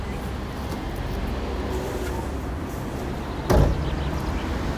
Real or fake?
real